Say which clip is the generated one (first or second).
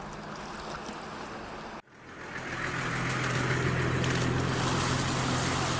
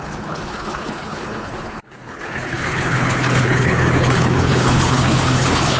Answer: second